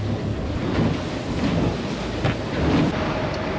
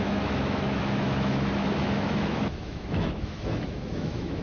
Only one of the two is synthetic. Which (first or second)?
second